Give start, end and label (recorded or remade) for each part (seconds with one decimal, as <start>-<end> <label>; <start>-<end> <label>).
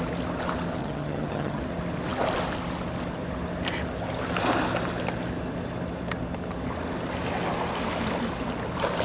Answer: 0.0-0.8 recorded; 0.8-1.6 remade; 1.6-9.0 recorded